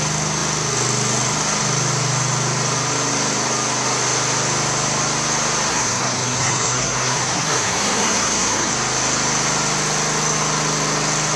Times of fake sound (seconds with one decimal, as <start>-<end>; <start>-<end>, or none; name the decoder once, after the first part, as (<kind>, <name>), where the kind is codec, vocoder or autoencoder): 5.7-8.7 (codec, SNAC)

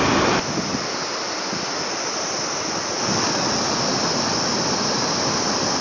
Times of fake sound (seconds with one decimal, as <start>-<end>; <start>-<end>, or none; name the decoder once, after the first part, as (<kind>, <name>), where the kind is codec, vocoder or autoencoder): none

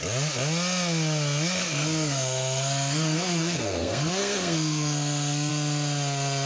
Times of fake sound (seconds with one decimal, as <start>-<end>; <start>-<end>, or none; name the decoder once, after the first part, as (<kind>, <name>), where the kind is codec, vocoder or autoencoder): 1.6-5.5 (codec, SNAC)

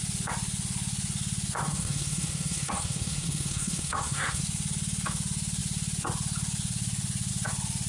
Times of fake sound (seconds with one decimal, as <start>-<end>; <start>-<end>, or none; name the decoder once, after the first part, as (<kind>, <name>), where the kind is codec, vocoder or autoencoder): 1.6-4.4 (codec, SNAC)

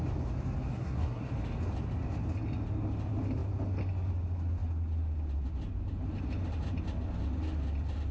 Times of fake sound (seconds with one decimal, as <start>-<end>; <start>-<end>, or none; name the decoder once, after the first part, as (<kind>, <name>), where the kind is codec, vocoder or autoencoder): 0.7-1.3 (codec, SNAC)

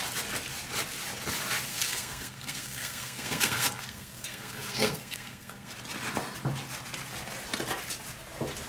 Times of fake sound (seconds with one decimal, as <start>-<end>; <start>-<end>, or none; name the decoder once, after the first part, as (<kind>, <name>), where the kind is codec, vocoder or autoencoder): 1.7-5.7 (codec, SNAC)

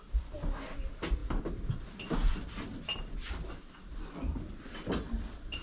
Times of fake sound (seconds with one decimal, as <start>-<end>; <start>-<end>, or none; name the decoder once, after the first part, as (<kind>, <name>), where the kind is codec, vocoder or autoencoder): none

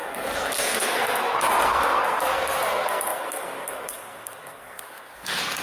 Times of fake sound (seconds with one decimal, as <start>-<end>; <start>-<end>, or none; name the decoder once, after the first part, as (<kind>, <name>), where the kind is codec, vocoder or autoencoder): 0.0-5.6 (codec, SNAC)